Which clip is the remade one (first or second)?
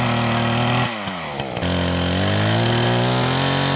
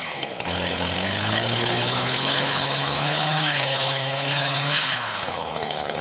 second